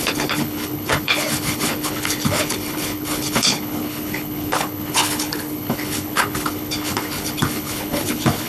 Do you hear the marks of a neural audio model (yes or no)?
yes